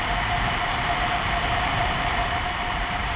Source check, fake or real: fake